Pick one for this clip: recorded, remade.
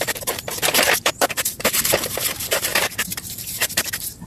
remade